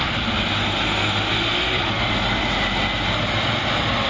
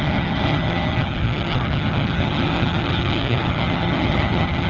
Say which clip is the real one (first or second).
first